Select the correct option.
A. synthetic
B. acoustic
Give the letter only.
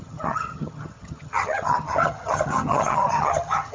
A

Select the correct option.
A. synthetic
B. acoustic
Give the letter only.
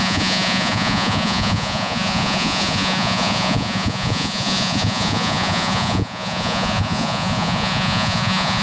A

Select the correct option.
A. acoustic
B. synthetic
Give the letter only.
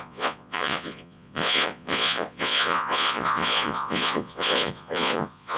B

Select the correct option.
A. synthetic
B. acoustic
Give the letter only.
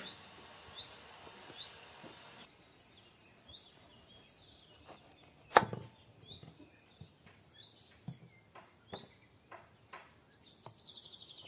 B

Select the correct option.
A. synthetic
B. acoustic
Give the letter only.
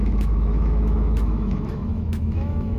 A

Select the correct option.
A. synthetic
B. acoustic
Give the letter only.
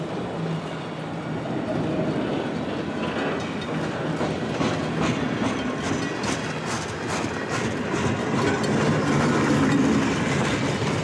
B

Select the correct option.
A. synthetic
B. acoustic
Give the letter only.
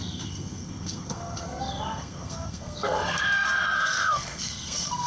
A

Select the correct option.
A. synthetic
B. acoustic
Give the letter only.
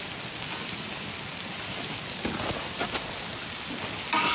B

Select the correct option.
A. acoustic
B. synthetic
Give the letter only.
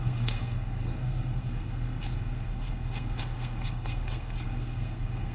B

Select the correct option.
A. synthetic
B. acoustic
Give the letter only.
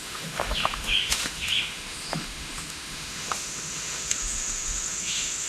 A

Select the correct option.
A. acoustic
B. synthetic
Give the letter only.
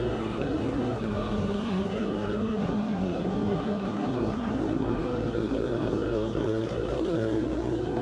B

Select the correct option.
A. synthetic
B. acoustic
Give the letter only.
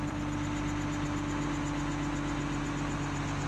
B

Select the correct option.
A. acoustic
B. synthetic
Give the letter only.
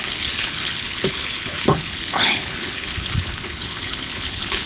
B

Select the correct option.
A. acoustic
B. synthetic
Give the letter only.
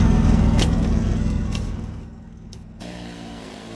B